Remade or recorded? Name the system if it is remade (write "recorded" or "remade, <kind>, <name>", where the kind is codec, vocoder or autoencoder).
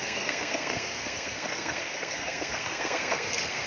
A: remade, codec, SNAC